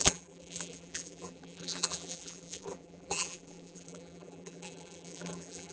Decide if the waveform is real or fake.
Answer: fake